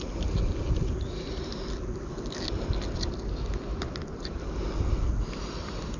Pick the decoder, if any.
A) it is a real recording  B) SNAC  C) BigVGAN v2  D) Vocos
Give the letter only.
A